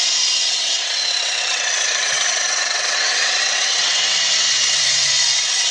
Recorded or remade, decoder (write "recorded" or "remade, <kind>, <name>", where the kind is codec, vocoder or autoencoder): remade, vocoder, WaveNeXt